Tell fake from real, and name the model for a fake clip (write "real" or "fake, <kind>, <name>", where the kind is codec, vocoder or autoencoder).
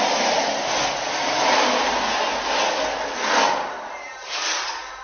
real